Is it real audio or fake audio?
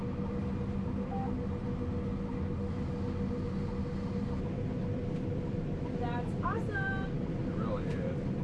real